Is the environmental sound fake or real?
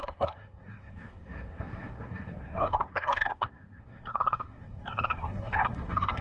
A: fake